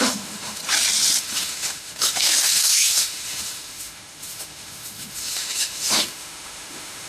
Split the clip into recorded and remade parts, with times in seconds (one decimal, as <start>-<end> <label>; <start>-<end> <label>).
0.0-0.6 remade; 0.6-1.2 recorded; 1.2-7.1 remade